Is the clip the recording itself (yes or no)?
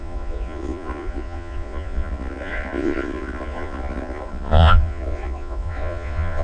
no